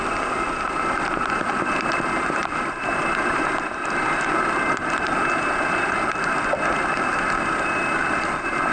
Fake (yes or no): no